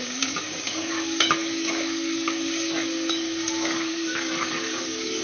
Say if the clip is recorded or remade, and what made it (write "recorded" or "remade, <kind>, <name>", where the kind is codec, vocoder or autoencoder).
remade, codec, DAC